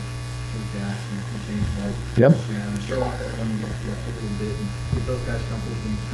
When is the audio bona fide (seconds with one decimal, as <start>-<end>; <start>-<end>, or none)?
0.0-0.9; 4.2-6.1